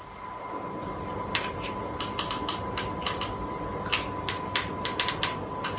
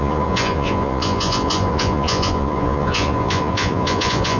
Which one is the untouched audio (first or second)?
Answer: first